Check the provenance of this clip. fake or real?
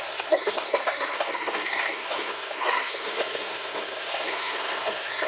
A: fake